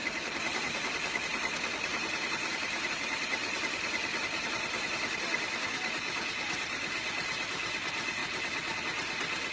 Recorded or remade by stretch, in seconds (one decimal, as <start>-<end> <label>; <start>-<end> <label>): 0.0-2.9 remade; 2.9-3.4 recorded; 3.4-6.3 remade; 6.3-8.2 recorded; 8.2-8.8 remade; 8.8-9.5 recorded

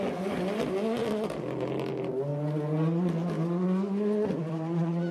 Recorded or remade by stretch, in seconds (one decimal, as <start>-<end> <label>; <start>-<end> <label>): 0.0-5.1 recorded